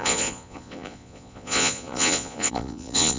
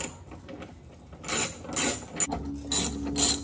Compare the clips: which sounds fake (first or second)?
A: first